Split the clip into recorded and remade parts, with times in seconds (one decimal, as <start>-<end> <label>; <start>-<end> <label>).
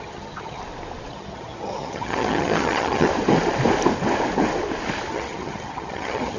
0.0-0.6 remade; 0.6-1.1 recorded; 1.1-3.1 remade; 3.1-5.1 recorded; 5.1-6.4 remade